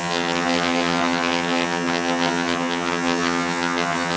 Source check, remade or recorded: remade